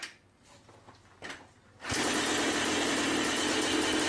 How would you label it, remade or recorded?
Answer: recorded